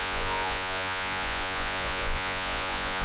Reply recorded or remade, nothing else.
remade